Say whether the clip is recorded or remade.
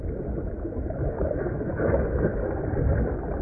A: recorded